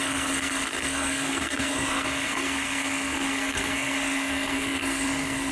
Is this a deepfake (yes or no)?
yes